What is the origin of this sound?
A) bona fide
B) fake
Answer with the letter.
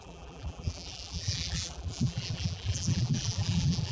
B